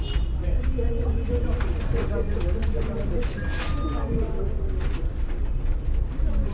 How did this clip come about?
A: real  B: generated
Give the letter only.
A